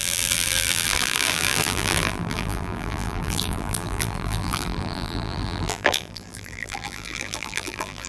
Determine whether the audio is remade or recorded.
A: remade